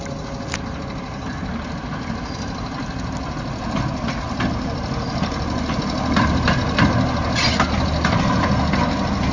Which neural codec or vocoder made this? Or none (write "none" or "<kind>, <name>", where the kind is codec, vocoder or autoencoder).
none